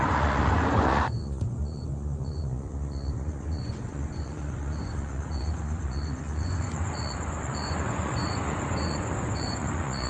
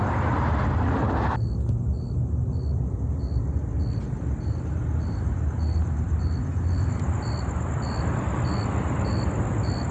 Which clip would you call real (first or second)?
second